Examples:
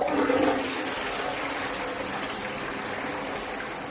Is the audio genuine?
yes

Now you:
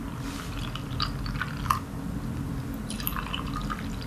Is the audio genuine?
yes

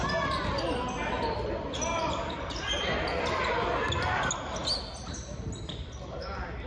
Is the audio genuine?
yes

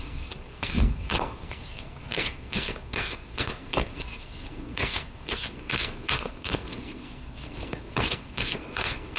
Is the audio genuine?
no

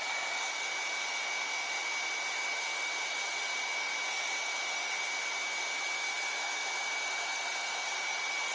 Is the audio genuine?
yes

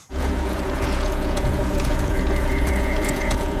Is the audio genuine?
no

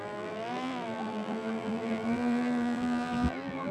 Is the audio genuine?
no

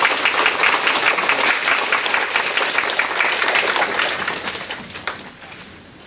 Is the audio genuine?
yes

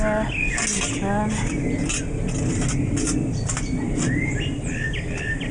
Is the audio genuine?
yes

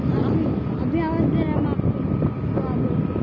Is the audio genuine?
yes